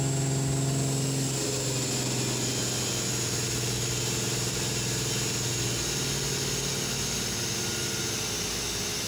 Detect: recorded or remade recorded